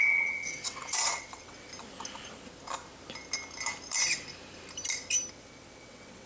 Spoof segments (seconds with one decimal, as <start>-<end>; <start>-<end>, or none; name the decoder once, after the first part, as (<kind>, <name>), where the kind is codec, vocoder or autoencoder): 0.0-1.7 (vocoder, WaveNeXt); 5.3-6.3